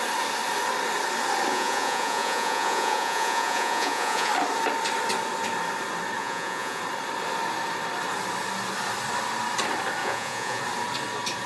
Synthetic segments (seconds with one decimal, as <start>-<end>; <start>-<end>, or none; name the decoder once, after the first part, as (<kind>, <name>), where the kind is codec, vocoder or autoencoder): 1.5-4.3 (vocoder, Vocos); 6.2-6.8; 10.0-10.6

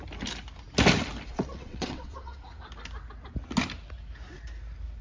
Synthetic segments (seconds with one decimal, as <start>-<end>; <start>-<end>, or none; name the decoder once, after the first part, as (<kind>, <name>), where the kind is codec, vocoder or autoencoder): 1.3-2.4 (vocoder, WaveNeXt)

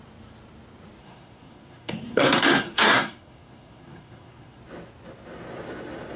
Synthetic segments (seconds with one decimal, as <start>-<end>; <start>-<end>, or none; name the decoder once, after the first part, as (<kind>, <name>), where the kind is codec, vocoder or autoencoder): 1.0-4.6 (codec, SNAC)

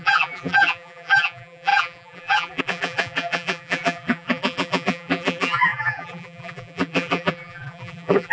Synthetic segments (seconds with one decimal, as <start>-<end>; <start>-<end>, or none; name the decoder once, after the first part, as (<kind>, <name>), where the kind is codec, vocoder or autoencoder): 0.0-8.3 (vocoder, BigVGAN v2)

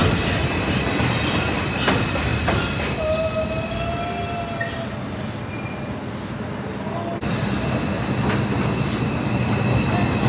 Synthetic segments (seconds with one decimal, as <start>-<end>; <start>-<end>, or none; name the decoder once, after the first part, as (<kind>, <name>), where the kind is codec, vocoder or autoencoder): none

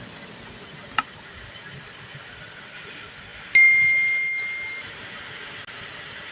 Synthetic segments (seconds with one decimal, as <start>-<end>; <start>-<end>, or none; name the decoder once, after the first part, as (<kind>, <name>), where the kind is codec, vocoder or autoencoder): none

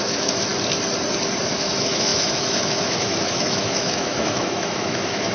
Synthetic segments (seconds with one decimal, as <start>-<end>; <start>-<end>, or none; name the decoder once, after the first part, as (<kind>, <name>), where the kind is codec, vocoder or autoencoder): 0.0-0.5 (autoencoder, DAC-VAE); 1.4-5.3